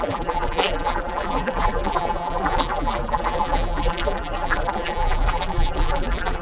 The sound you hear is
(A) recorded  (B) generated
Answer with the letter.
B